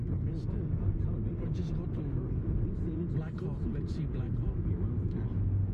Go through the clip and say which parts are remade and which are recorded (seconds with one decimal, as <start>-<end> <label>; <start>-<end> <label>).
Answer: 0.0-5.7 recorded